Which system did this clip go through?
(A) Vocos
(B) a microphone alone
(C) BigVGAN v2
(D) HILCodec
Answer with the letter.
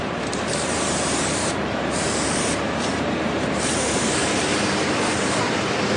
C